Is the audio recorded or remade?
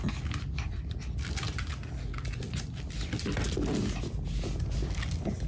recorded